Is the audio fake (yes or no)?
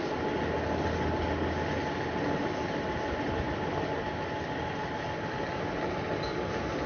no